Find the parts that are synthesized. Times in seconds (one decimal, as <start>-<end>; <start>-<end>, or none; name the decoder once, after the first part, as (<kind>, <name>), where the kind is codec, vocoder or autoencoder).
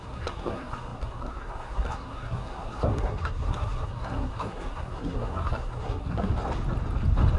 0.0-6.3 (codec, SNAC)